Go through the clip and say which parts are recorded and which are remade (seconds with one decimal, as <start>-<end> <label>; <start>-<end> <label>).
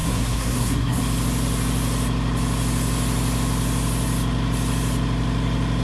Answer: 0.0-1.0 remade; 1.0-5.8 recorded